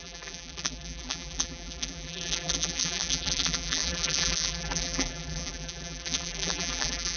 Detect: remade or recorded remade